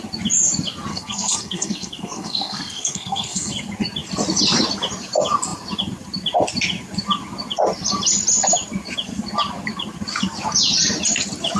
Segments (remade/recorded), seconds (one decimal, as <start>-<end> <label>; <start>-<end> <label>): 0.0-0.9 recorded; 0.9-3.5 remade; 3.5-11.6 recorded